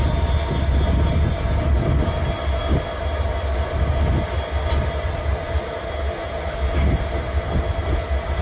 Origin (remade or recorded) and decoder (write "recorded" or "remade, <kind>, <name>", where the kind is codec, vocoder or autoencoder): recorded